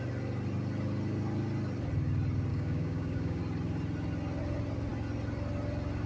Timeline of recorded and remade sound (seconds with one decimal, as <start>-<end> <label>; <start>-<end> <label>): 0.0-2.5 recorded; 2.5-3.4 remade; 3.4-6.1 recorded

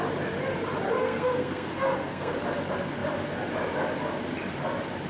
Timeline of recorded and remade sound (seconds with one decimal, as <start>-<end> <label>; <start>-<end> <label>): 0.0-1.0 recorded; 1.0-2.3 remade; 2.3-5.1 recorded

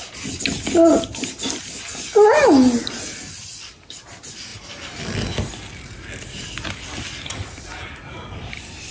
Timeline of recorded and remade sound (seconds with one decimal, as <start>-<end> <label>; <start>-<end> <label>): 0.0-8.9 recorded

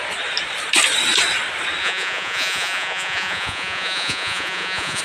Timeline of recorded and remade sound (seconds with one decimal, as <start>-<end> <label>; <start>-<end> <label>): 0.0-1.8 recorded; 1.8-5.0 remade

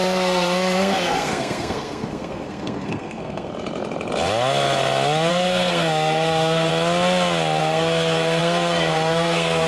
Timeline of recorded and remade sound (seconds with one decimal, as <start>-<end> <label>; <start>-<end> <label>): 0.0-3.5 remade; 3.5-5.3 recorded; 5.3-6.7 remade; 6.7-7.6 recorded; 7.6-9.7 remade

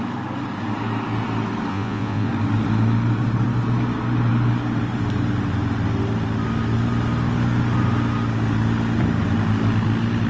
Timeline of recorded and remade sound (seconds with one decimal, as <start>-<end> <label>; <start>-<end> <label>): 0.0-1.7 recorded; 1.7-2.3 remade; 2.3-10.3 recorded